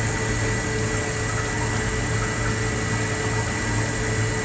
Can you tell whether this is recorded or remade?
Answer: recorded